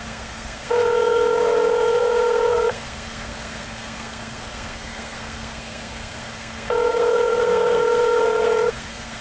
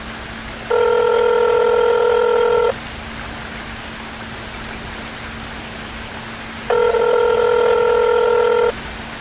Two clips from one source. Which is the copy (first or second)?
first